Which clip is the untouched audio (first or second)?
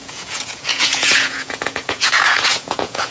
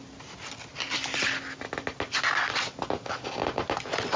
second